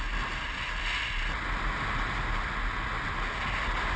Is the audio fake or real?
real